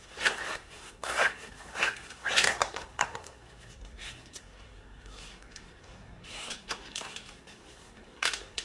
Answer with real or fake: fake